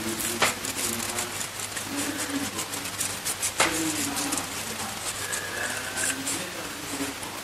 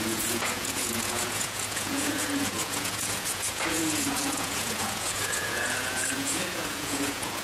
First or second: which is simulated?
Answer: second